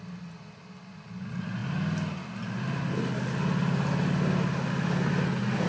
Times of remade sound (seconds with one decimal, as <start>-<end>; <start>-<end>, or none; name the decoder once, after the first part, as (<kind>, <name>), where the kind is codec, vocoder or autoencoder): none